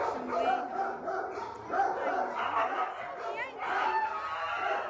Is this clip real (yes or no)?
yes